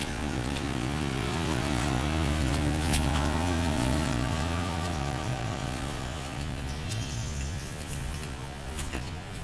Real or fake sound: fake